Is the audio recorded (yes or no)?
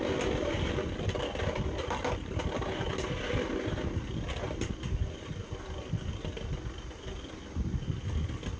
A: yes